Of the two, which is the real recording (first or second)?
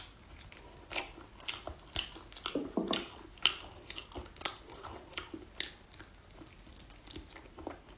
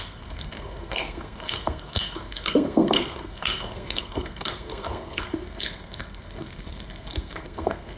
first